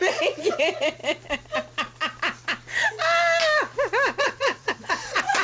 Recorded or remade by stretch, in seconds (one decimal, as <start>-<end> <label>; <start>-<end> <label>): 0.0-1.0 remade; 1.0-4.2 recorded; 4.2-5.4 remade